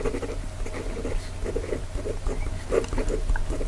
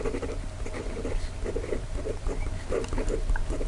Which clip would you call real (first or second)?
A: first